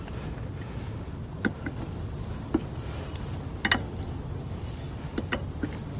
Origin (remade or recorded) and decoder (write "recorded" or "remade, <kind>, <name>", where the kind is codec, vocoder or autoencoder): recorded